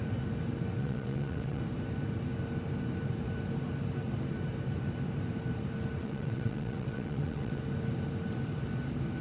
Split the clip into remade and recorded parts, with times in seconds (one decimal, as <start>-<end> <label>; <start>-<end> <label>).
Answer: 0.0-0.8 recorded; 0.8-1.6 remade; 1.6-6.0 recorded; 6.0-7.6 remade; 7.6-9.2 recorded